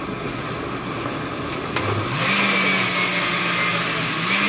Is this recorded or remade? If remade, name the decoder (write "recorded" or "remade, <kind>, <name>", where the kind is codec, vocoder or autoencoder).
recorded